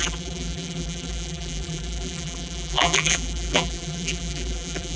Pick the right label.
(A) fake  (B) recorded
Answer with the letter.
A